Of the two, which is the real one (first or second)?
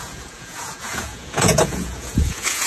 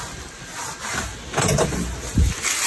second